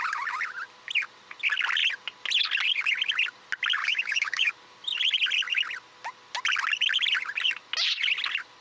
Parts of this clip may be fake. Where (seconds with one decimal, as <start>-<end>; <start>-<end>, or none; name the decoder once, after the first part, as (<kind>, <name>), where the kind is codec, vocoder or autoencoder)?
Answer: 3.8-4.5 (codec, DAC)